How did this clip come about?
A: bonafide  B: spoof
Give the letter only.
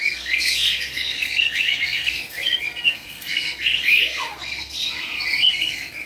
B